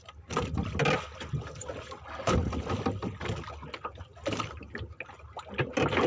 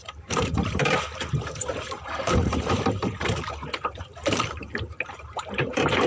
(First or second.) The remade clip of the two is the second